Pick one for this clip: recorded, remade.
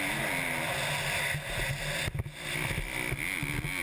recorded